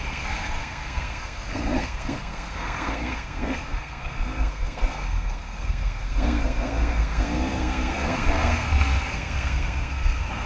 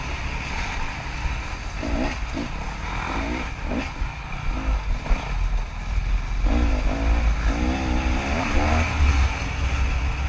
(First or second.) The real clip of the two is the second